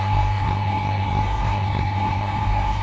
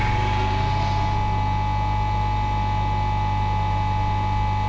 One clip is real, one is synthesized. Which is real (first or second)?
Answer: second